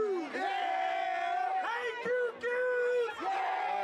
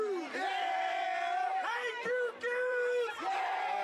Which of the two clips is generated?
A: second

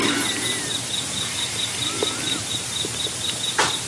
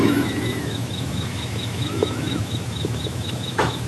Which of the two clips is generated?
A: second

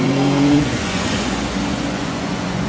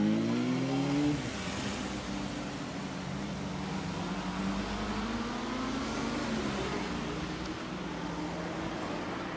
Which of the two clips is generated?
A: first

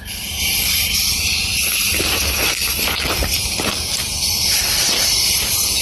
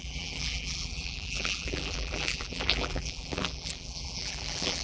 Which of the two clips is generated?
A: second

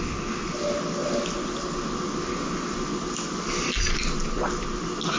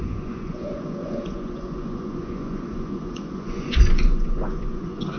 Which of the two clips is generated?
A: second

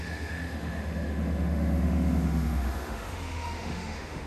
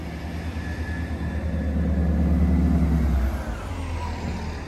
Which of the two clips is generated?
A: first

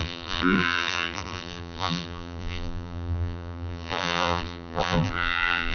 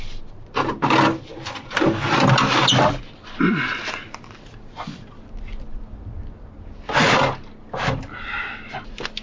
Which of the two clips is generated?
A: first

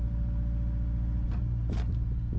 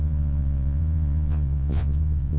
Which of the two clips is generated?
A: second